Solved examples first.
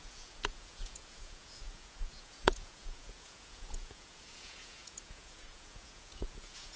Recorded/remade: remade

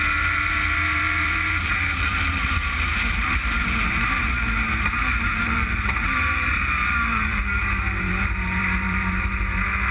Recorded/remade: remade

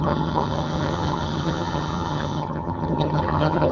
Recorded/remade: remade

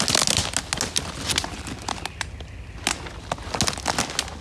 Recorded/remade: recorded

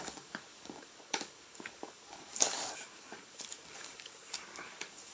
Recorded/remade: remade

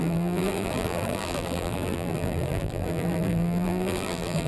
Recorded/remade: remade